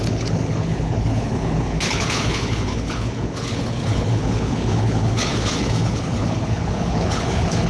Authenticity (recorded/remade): remade